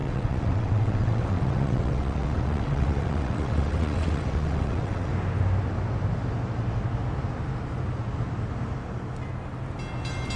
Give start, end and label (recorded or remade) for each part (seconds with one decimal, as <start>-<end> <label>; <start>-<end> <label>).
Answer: 0.0-5.1 remade; 5.1-10.4 recorded